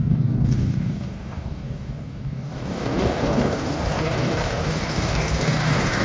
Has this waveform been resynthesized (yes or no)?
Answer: yes